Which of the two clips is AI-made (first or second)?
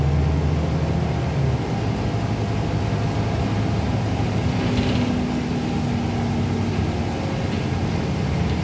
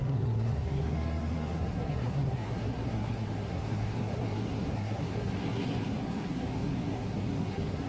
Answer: second